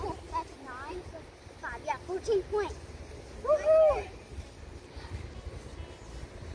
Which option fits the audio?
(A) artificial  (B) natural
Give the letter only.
B